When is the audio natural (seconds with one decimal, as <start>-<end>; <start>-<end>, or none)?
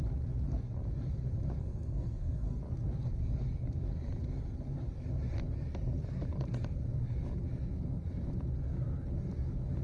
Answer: 0.0-1.6; 2.6-9.8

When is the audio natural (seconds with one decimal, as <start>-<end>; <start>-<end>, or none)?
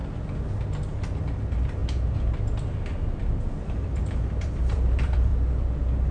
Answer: 0.0-1.2; 1.8-3.2; 5.3-6.1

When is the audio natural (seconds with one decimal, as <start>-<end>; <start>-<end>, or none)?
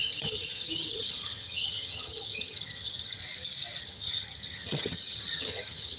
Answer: 3.2-3.8